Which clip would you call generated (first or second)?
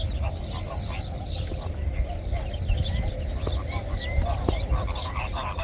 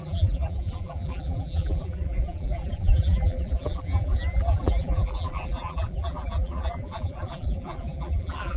second